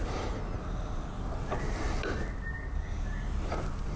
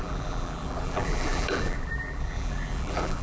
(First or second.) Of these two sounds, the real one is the first